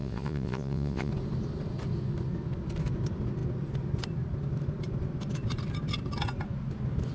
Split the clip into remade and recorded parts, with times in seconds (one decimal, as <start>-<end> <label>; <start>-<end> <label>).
0.0-1.1 remade; 1.1-7.1 recorded